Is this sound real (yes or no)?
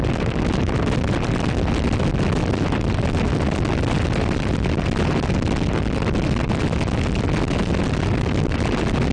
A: yes